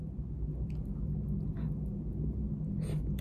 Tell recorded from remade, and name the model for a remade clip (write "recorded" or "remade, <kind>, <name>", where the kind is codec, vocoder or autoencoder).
recorded